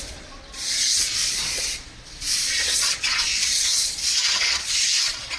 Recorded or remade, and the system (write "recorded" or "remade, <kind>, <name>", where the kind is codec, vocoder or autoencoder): remade, vocoder, Vocos